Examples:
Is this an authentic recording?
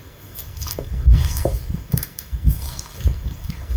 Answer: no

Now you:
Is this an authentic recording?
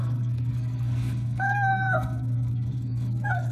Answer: no